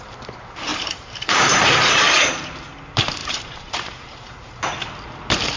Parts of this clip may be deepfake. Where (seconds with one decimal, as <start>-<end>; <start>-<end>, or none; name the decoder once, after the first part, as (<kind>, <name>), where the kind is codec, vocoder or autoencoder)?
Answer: 0.7-2.0 (vocoder, BigVGAN v2); 3.2-4.3